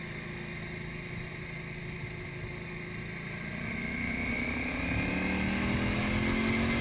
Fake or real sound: real